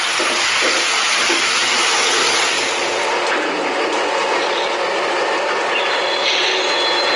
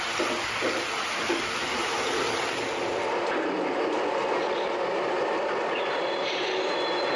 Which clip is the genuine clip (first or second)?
first